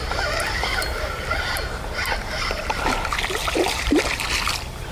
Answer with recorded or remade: recorded